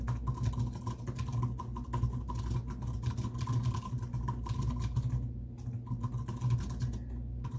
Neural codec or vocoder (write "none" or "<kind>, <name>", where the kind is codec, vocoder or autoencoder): none